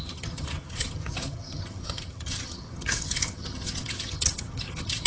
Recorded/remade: remade